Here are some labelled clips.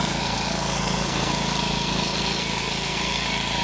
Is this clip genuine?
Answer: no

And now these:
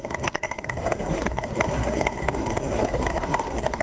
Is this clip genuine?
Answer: no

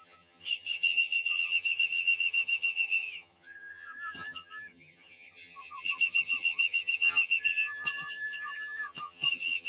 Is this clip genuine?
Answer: no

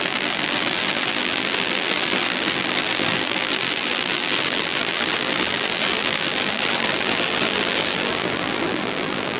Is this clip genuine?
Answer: no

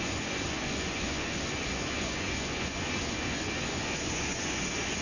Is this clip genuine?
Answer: no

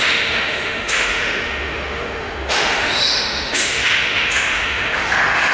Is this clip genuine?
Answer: no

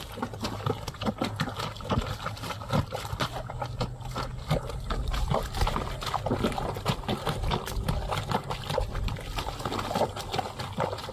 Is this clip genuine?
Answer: yes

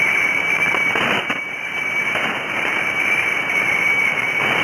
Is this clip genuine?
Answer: no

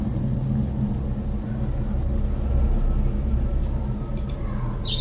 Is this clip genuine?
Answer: yes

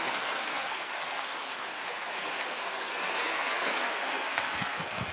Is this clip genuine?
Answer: no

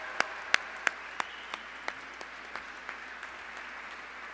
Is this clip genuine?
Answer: yes